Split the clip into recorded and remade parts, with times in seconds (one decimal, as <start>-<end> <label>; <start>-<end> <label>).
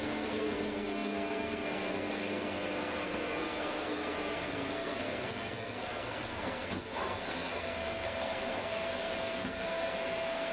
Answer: 0.0-10.5 remade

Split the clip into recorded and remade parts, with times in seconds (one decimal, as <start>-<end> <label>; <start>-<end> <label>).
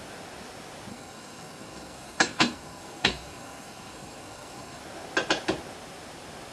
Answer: 0.0-0.9 recorded; 0.9-4.8 remade; 4.8-6.5 recorded